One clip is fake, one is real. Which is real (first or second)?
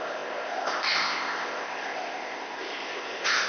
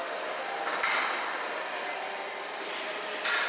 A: second